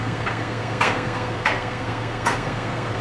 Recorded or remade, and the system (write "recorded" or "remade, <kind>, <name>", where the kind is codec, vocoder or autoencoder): remade, codec, SNAC